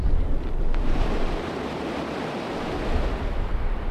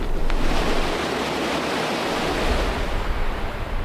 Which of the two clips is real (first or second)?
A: second